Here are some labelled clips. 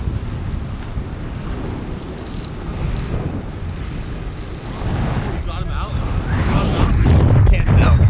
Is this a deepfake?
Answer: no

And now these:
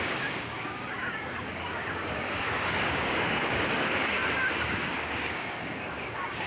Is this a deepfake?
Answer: yes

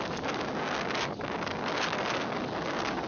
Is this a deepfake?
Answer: yes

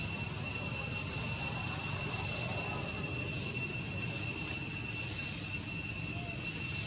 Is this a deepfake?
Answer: no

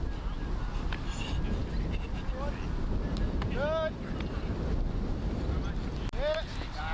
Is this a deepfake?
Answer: no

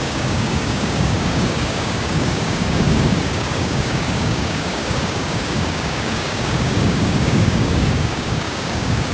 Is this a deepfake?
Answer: yes